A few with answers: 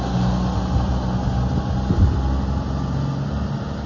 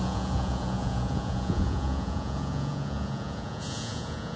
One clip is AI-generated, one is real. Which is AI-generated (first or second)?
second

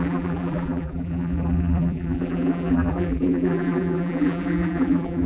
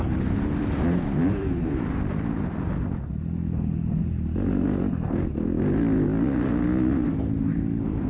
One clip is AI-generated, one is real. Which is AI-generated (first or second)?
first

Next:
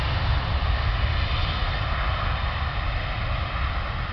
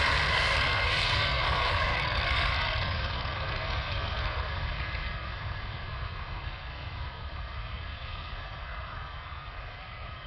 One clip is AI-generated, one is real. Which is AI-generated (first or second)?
second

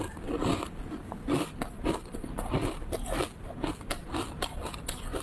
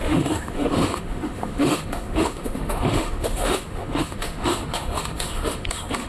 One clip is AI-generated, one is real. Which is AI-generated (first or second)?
second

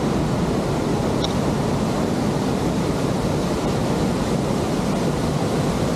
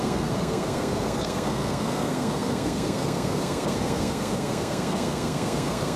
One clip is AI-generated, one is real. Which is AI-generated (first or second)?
second